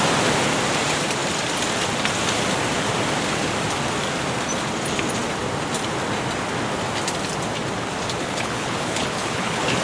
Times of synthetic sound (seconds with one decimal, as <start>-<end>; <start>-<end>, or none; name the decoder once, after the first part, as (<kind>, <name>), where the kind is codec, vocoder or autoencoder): 8.2-9.8 (codec, HILCodec)